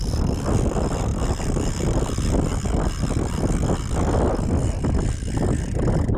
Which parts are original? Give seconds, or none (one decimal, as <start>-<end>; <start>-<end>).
0.0-6.2